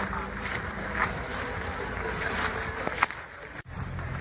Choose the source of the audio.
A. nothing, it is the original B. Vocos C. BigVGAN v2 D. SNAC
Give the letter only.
C